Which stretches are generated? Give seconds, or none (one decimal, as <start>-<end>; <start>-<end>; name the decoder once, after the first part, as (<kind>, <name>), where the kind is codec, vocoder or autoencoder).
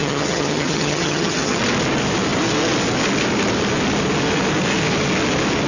0.0-1.6 (vocoder, HiFi-GAN)